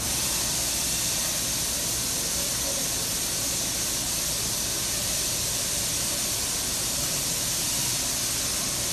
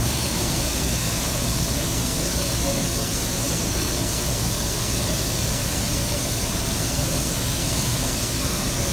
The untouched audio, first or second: first